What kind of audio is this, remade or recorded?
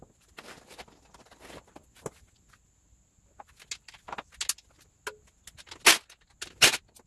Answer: recorded